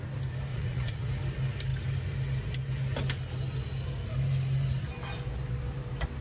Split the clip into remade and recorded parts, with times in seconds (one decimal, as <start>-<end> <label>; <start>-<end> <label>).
0.0-0.5 recorded; 0.5-1.1 remade; 1.1-6.2 recorded